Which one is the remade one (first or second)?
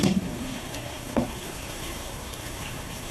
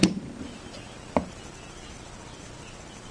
first